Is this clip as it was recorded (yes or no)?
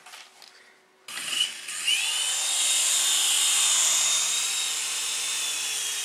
yes